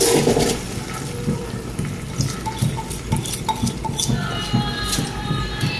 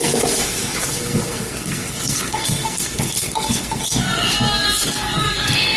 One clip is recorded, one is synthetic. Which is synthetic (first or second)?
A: second